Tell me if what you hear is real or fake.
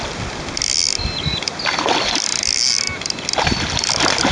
real